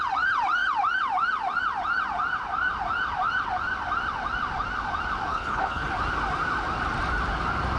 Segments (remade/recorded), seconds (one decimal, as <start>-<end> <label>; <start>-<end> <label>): 0.0-5.3 recorded; 5.3-5.9 remade; 5.9-7.8 recorded